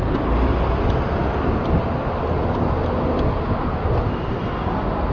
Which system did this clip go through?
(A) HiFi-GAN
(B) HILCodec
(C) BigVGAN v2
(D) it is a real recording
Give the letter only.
D